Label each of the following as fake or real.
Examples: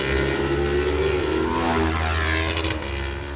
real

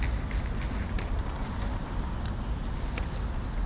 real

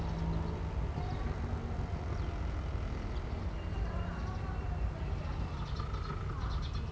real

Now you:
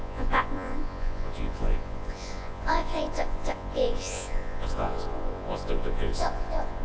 fake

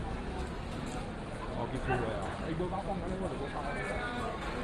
real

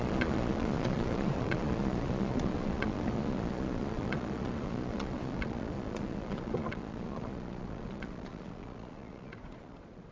fake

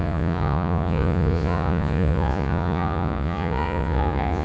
fake